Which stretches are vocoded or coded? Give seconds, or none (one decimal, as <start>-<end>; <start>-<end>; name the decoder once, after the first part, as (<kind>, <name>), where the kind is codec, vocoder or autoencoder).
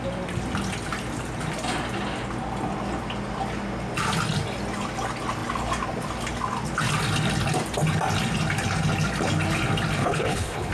10.0-10.7 (codec, HILCodec)